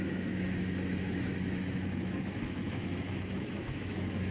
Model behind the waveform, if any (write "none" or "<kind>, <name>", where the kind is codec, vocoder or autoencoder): autoencoder, DAC-VAE